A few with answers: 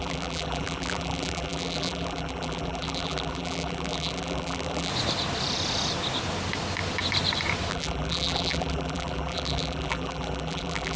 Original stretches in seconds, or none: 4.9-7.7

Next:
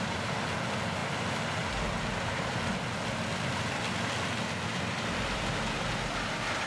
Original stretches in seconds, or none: 1.0-4.7

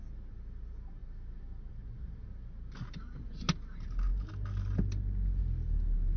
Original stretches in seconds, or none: 0.0-6.2

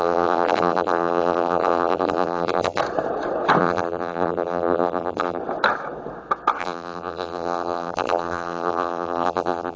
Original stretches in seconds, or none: 2.8-3.6; 5.4-6.6